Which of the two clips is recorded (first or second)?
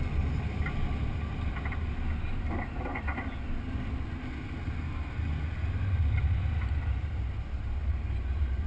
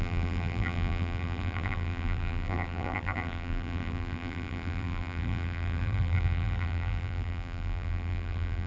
first